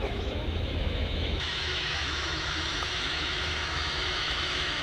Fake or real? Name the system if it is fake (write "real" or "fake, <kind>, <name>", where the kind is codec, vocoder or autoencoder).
fake, autoencoder, DAC-VAE